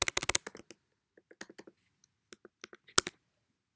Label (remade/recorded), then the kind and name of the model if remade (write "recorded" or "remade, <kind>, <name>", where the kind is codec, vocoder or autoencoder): recorded